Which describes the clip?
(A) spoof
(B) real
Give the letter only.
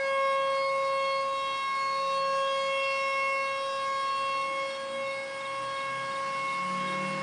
B